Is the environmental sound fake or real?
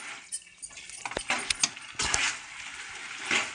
real